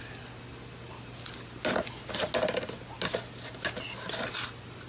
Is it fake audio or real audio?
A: real